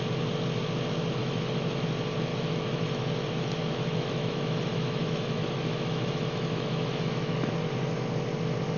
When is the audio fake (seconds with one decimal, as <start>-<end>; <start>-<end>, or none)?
1.2-1.8; 2.3-7.5